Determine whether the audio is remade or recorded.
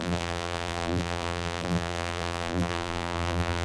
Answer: remade